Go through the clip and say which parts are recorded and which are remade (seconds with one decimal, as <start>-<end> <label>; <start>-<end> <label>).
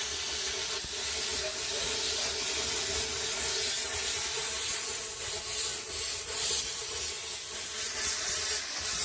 0.0-9.0 recorded